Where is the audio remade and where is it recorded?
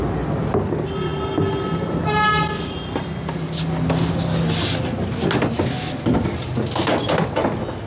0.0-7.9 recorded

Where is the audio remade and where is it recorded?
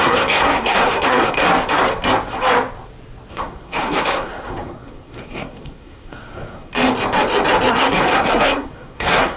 0.0-1.4 remade; 1.4-3.3 recorded; 3.3-6.7 remade; 6.7-7.7 recorded; 7.7-9.4 remade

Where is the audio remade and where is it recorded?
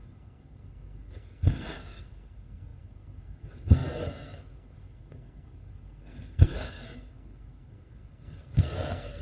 0.0-9.2 remade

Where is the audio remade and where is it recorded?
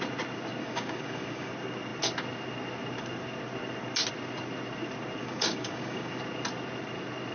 0.0-0.6 recorded; 0.6-1.5 remade; 1.5-5.2 recorded; 5.2-6.2 remade; 6.2-7.3 recorded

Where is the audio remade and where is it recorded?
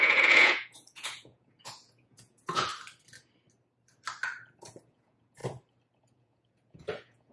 0.0-2.7 remade; 2.7-4.9 recorded; 4.9-5.4 remade; 5.4-6.0 recorded; 6.0-7.3 remade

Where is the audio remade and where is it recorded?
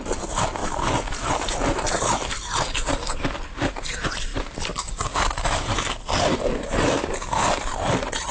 0.0-4.3 recorded; 4.3-8.3 remade